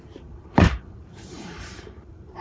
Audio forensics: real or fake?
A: fake